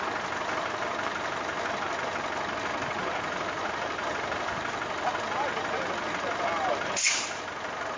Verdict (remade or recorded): recorded